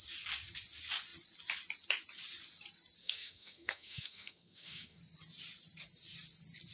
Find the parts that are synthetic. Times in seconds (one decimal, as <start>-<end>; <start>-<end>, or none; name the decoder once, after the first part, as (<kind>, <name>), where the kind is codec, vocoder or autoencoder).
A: 3.0-5.0 (codec, SNAC)